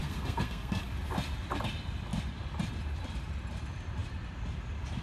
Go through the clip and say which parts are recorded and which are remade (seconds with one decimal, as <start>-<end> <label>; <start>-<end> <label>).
0.0-0.9 remade; 0.9-5.0 recorded